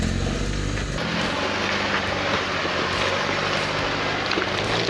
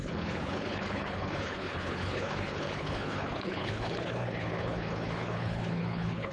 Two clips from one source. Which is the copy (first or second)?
second